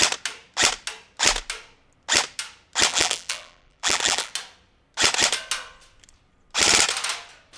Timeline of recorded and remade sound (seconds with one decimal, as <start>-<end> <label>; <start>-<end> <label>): 0.0-2.9 recorded; 2.9-4.3 remade; 4.3-7.6 recorded